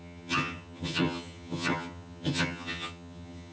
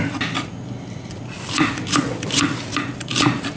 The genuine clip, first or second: second